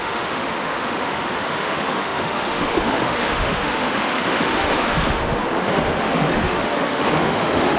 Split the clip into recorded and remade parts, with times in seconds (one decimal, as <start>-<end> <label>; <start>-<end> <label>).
0.0-7.8 remade